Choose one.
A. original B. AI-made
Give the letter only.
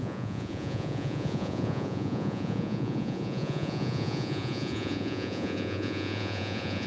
B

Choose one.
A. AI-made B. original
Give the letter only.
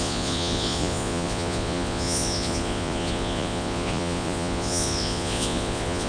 A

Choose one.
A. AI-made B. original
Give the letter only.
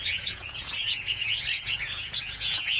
A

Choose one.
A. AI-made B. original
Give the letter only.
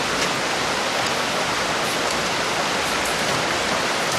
B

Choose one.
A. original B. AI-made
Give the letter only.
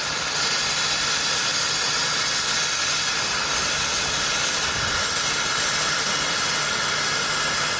A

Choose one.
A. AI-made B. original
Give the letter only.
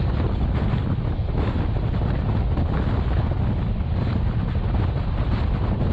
B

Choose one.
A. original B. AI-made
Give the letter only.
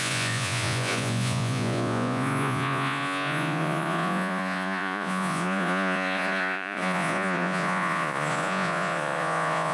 B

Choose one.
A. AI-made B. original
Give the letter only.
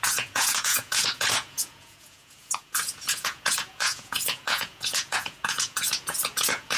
A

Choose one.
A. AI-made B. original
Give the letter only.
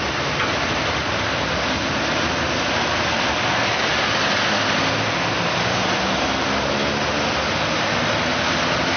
B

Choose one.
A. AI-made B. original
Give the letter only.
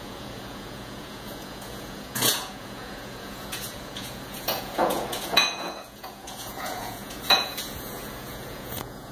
A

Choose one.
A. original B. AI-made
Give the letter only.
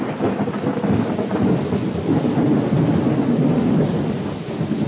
A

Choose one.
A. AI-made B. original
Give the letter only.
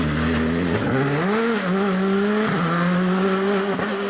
B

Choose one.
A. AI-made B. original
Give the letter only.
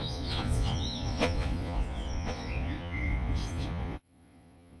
A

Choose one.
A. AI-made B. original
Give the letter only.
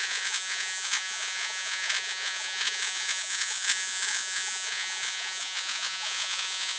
A